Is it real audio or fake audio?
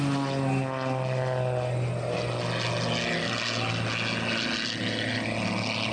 real